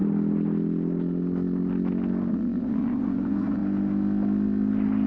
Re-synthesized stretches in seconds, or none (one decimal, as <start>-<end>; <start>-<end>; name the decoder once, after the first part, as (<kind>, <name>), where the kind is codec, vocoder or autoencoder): 2.3-3.6 (vocoder, Vocos)